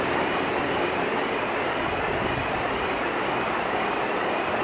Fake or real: real